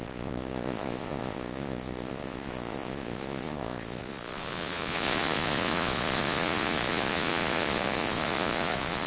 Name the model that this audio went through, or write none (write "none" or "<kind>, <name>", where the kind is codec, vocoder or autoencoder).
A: vocoder, Vocos